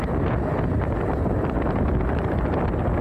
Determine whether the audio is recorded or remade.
recorded